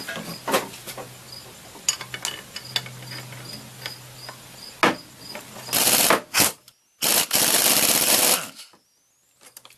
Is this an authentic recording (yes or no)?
yes